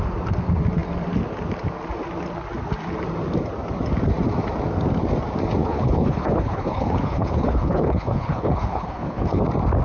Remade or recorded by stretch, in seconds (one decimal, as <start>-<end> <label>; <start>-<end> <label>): 0.0-5.6 recorded; 5.6-9.4 remade; 9.4-9.8 recorded